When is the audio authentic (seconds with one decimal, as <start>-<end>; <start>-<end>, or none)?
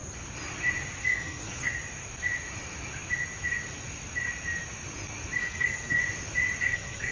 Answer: 0.0-1.0; 1.7-5.4; 6.0-6.6